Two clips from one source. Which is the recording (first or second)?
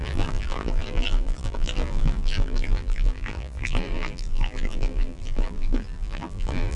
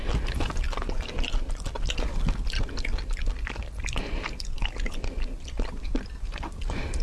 second